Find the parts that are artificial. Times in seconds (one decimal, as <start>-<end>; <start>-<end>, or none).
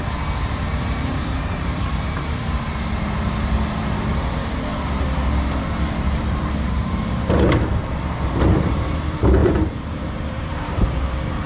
0.0-11.5